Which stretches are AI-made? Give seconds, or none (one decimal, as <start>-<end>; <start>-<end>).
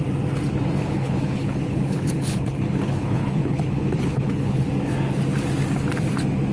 0.8-4.7